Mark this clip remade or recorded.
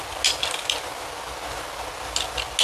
recorded